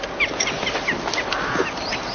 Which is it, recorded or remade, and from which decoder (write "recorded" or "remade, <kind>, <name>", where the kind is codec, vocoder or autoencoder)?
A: recorded